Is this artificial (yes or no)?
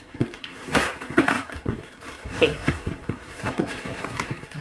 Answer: yes